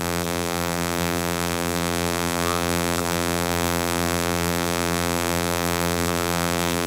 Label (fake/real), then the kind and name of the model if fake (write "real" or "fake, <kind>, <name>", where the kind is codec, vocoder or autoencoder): fake, vocoder, BigVGAN v2